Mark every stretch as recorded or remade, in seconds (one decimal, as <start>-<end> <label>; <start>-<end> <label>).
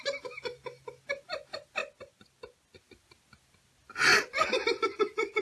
0.0-4.1 recorded; 4.1-5.4 remade